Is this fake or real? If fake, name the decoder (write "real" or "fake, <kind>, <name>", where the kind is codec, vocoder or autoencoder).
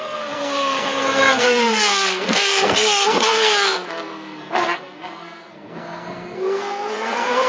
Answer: fake, codec, SNAC